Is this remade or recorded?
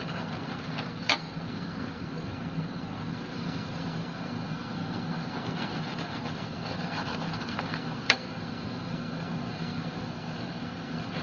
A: remade